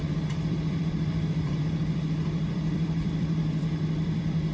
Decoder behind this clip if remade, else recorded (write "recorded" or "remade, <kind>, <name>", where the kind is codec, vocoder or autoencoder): remade, vocoder, BigVGAN v2